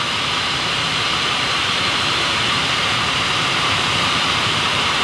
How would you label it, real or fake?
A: fake